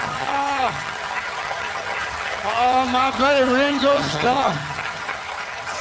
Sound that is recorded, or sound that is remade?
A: remade